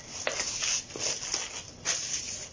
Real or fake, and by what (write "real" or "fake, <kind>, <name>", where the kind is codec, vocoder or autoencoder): real